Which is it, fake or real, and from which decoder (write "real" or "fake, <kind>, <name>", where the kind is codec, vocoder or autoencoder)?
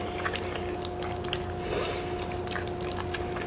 real